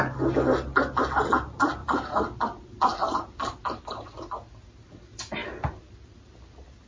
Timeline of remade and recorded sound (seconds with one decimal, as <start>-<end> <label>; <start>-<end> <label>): 0.0-1.8 recorded; 1.8-2.4 remade; 2.4-3.0 recorded; 3.0-3.8 remade; 3.8-6.9 recorded